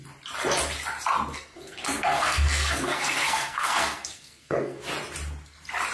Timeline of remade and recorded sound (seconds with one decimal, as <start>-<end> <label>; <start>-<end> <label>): 0.0-1.3 recorded; 1.3-4.8 remade; 4.8-5.9 recorded